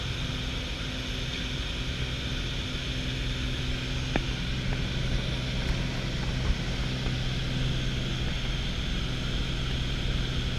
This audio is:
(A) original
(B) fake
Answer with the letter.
A